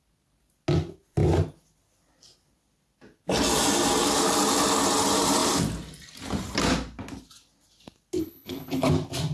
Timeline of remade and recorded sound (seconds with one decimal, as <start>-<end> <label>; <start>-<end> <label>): 0.0-8.2 recorded; 8.2-8.9 remade; 8.9-9.3 recorded